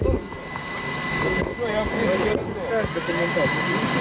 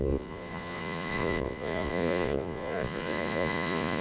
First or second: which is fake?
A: second